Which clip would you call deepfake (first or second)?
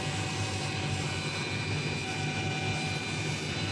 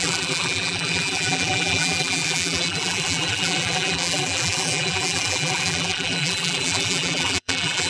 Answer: second